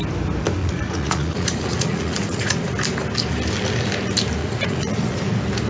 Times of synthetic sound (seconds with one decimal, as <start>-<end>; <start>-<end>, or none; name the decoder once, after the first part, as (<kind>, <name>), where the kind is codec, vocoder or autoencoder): 0.6-2.7 (vocoder, Vocos); 4.4-5.2

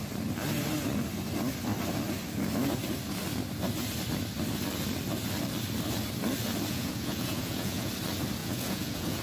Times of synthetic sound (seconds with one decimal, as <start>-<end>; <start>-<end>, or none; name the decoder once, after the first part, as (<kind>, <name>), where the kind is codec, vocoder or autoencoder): 6.7-7.9 (vocoder, Vocos); 8.4-9.2

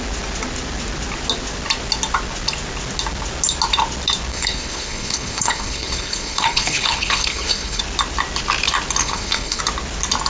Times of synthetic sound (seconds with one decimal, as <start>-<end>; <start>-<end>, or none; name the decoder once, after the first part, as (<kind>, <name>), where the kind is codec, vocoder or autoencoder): 4.3-7.8 (codec, HILCodec); 9.0-9.6

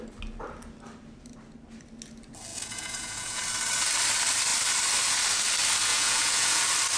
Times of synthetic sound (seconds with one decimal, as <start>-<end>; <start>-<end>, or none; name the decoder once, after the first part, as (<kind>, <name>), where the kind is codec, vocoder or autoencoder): 2.5-3.4 (vocoder, Vocos); 5.9-6.6